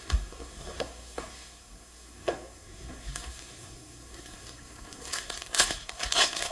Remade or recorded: remade